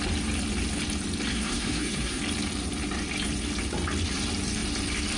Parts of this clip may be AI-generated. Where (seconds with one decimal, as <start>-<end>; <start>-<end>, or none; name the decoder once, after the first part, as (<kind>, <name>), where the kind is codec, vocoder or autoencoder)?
1.3-2.2 (codec, SNAC)